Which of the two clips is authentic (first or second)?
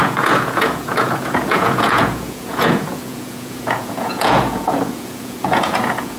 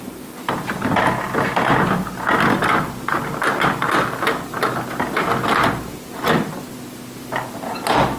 second